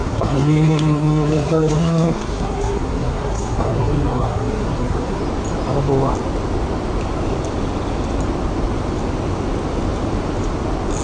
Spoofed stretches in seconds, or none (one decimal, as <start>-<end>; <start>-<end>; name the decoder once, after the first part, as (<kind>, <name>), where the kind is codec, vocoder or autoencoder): 0.0-5.2 (codec, SNAC)